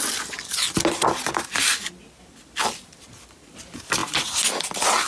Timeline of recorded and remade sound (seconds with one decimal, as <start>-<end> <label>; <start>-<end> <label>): 0.0-5.1 recorded